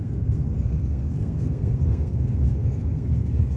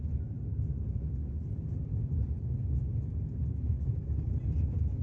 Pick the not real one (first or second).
first